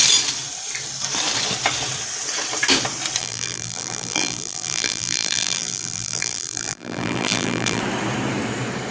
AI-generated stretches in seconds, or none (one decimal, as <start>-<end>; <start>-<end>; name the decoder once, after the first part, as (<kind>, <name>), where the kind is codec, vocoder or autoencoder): 3.2-7.8 (vocoder, BigVGAN v2)